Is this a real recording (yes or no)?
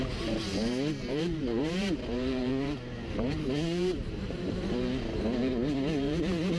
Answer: no